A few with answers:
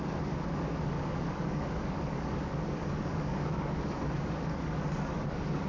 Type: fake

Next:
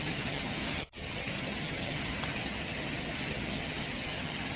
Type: fake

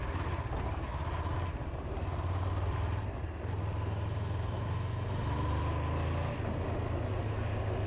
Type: real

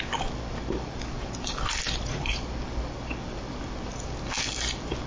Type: real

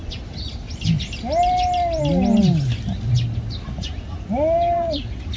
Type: real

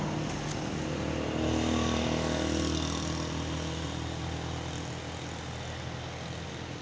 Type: real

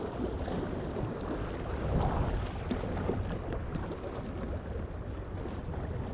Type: real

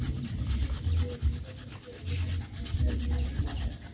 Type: real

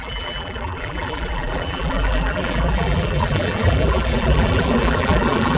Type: fake